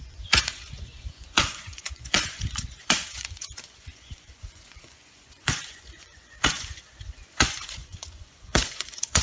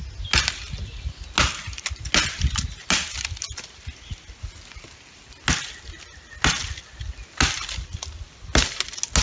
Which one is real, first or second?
second